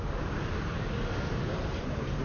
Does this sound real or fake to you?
real